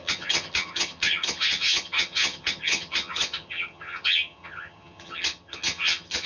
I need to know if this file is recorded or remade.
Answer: remade